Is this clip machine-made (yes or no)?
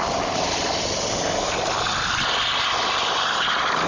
no